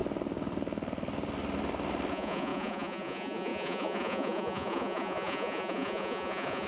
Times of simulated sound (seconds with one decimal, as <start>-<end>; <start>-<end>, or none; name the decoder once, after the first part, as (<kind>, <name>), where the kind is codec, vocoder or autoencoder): 2.1-6.7 (vocoder, Vocos)